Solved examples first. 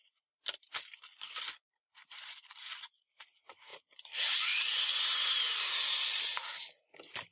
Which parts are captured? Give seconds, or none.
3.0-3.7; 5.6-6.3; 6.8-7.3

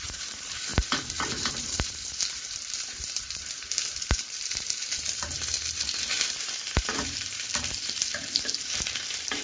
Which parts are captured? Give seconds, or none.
none

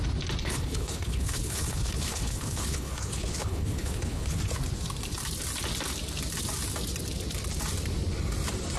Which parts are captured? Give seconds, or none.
0.0-0.4; 4.4-8.8

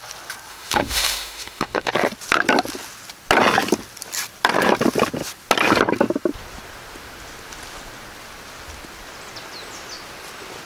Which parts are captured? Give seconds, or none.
0.0-0.5; 1.9-10.7

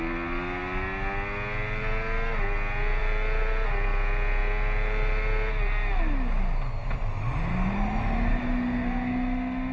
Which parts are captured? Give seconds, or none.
0.0-9.7